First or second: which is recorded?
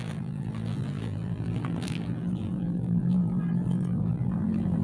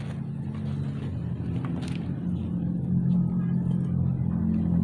second